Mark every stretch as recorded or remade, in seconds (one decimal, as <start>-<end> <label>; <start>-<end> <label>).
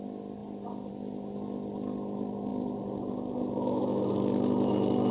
0.0-5.1 recorded